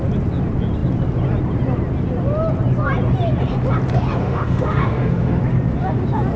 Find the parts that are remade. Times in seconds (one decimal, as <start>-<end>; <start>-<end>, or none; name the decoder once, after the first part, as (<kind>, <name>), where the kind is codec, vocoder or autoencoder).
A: 4.2-5.4 (autoencoder, DAC-VAE)

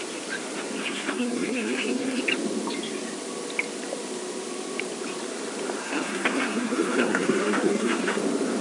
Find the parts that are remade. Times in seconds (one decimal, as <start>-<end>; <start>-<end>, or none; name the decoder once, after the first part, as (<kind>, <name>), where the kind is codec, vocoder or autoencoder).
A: 0.8-2.2 (codec, SNAC); 5.8-8.2

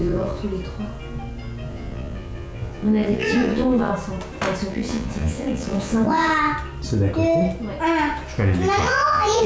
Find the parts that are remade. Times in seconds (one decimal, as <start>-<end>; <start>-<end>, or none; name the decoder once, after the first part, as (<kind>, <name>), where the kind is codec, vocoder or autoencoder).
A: 0.0-0.4 (vocoder, Vocos); 1.7-3.9; 4.7-6.3; 8.8-9.5

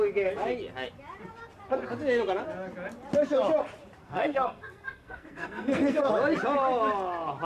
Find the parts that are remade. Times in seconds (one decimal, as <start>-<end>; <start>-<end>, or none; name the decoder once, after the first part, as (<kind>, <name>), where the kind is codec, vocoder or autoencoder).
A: 4.0-6.1 (codec, SNAC)

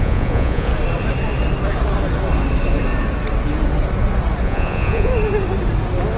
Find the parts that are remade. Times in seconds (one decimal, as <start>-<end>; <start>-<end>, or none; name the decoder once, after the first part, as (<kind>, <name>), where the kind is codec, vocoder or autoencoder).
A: 0.0-0.7 (vocoder, Vocos); 4.4-5.1

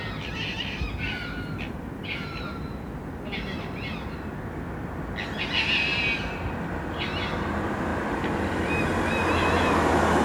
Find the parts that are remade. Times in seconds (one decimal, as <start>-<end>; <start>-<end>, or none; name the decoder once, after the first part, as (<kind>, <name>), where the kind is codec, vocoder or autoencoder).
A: none

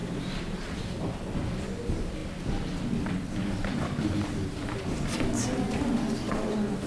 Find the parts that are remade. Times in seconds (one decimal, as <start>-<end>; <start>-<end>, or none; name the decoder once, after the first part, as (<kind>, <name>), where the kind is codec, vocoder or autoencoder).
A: 0.0-0.8 (vocoder, BigVGAN v2)